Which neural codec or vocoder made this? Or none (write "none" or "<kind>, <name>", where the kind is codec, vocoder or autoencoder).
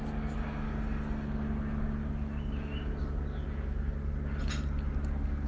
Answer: none